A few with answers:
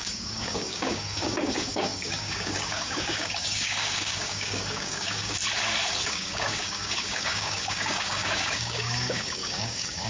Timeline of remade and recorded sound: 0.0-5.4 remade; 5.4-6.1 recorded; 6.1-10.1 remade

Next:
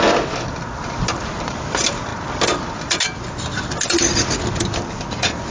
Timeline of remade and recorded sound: 0.0-5.5 recorded